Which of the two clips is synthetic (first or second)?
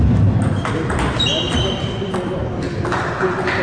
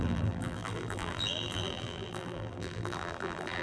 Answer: second